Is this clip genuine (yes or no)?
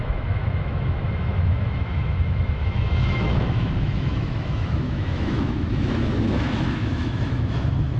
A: no